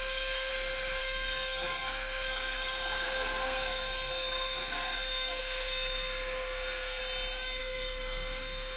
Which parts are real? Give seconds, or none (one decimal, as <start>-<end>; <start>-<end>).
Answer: 0.5-1.0; 7.0-7.6